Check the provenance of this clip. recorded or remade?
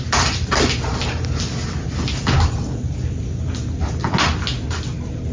recorded